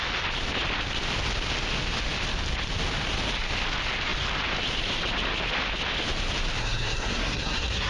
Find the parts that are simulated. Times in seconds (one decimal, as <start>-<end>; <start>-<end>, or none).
6.6-7.9